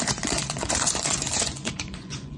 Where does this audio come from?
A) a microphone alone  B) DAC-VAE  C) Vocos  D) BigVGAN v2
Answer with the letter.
C